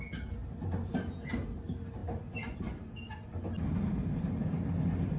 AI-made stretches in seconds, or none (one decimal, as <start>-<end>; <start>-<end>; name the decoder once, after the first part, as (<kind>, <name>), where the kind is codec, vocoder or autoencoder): none